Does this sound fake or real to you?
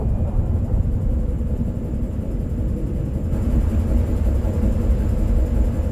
fake